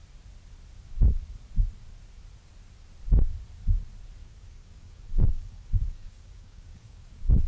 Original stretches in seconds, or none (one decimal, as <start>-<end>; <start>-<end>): 0.0-4.2